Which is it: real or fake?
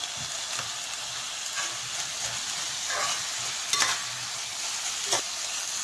real